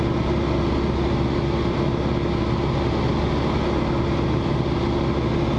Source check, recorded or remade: recorded